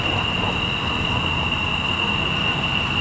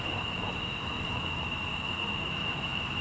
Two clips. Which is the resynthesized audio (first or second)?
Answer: second